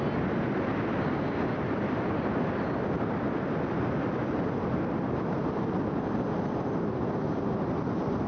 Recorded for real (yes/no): yes